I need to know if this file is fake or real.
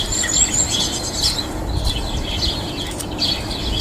real